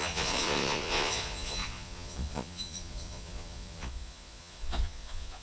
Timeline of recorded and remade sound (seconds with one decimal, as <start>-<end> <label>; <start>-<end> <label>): 0.0-5.4 remade